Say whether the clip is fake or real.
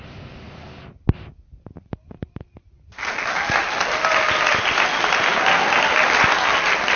real